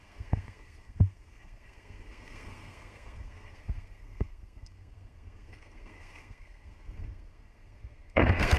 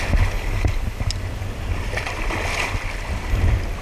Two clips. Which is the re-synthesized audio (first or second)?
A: first